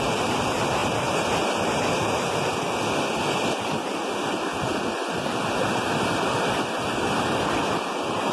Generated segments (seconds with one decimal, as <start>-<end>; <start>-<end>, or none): none